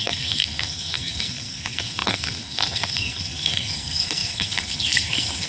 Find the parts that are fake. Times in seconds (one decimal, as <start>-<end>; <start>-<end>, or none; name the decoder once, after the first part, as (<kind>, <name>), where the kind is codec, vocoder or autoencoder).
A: 0.0-5.5 (codec, SNAC)